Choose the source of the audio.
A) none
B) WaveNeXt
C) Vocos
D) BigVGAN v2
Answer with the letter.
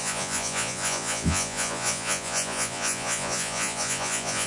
C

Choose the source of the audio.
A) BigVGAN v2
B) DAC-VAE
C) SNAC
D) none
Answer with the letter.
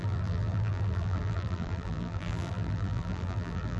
A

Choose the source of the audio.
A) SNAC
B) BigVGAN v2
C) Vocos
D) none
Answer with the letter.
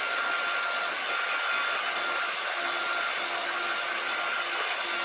D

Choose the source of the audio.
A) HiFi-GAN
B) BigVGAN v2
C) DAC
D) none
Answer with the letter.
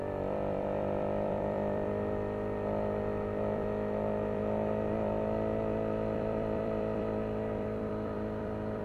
B